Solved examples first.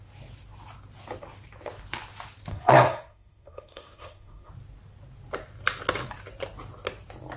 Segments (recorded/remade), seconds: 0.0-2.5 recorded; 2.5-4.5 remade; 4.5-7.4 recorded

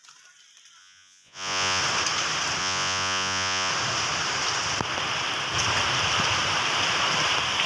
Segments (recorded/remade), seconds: 0.0-0.8 recorded; 0.8-1.8 remade; 1.8-2.6 recorded; 2.6-3.7 remade; 3.7-7.7 recorded

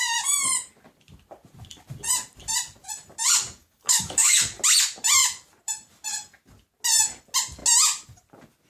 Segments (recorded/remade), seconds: 0.0-3.6 recorded; 3.6-4.4 remade; 4.4-8.7 recorded

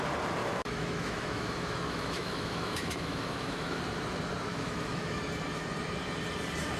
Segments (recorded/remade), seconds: 0.0-0.4 recorded; 0.4-3.8 remade; 3.8-4.5 recorded; 4.5-5.2 remade; 5.2-6.8 recorded

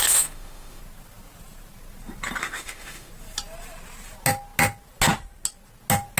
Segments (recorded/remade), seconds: 0.0-0.8 remade; 0.8-2.4 recorded; 2.4-3.1 remade; 3.1-6.2 recorded

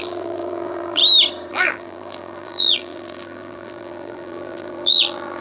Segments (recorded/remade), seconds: 0.0-1.0 remade; 1.0-1.5 recorded; 1.5-5.4 remade

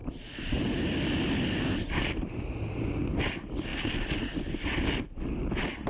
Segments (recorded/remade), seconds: 0.0-5.9 recorded

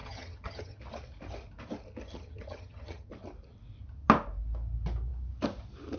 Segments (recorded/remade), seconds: 0.0-0.8 remade; 0.8-2.0 recorded; 2.0-3.1 remade; 3.1-6.0 recorded